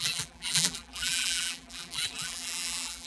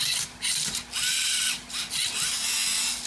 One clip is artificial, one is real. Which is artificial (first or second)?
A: first